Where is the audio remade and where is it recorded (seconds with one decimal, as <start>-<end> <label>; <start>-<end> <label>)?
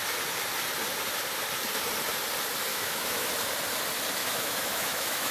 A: 0.0-2.7 recorded; 2.7-3.3 remade; 3.3-4.2 recorded; 4.2-5.3 remade